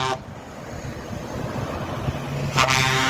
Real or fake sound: real